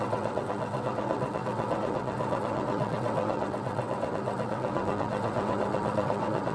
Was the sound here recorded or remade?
remade